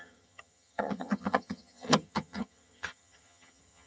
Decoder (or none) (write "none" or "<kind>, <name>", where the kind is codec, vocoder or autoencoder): vocoder, HiFi-GAN